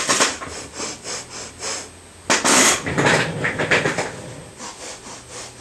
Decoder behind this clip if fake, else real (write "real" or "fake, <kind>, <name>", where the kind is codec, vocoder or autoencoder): real